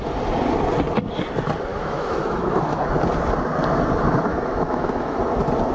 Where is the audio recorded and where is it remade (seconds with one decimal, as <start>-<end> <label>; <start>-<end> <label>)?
0.0-1.7 recorded; 1.7-2.8 remade; 2.8-4.3 recorded; 4.3-5.2 remade; 5.2-5.7 recorded

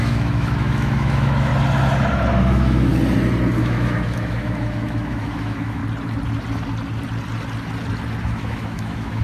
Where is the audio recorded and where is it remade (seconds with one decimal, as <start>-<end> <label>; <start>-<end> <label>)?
0.0-1.5 remade; 1.5-2.4 recorded; 2.4-2.9 remade; 2.9-3.6 recorded; 3.6-5.8 remade; 5.8-8.2 recorded; 8.2-9.2 remade

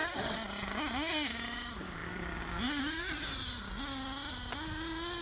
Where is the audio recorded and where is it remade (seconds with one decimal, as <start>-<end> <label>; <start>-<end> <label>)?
0.0-5.2 recorded